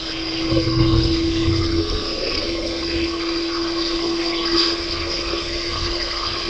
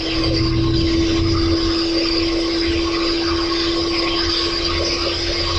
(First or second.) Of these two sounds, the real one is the second